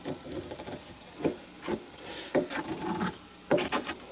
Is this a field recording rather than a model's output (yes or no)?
yes